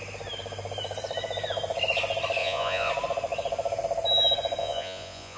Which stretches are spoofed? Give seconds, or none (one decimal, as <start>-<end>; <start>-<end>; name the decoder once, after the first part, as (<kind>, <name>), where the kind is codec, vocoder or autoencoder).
2.4-2.9 (vocoder, Vocos); 4.6-5.4

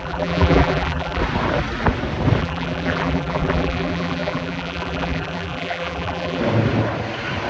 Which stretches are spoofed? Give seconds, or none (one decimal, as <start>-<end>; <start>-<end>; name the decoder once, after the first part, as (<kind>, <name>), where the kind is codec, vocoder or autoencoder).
0.0-1.2 (vocoder, BigVGAN v2); 2.4-6.4

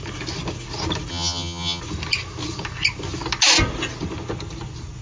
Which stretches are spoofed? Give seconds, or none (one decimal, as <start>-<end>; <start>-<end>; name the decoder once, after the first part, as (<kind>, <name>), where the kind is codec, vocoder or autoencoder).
1.1-1.8 (vocoder, HiFi-GAN)

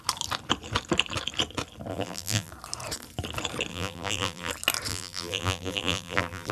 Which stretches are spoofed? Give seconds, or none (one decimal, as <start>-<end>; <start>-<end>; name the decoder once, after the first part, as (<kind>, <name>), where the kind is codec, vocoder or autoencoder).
1.9-2.5 (vocoder, BigVGAN v2); 3.7-4.5; 4.9-6.5